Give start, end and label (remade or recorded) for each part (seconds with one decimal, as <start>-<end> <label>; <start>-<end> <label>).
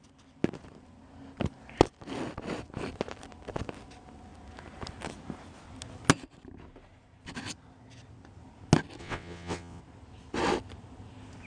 0.0-9.0 recorded; 9.0-9.8 remade; 9.8-11.5 recorded